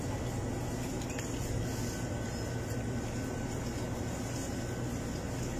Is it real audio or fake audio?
real